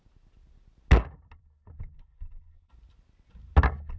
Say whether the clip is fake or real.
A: real